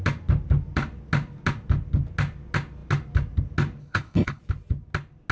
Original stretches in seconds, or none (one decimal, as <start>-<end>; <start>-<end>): 0.0-3.8; 4.4-5.3